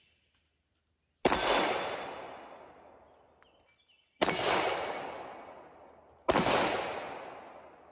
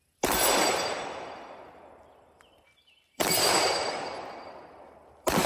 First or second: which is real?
first